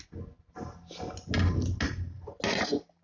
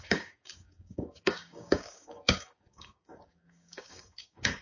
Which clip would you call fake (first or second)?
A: second